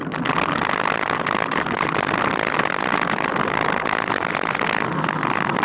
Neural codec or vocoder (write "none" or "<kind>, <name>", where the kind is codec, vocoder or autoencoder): none